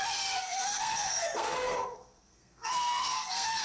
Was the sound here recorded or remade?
remade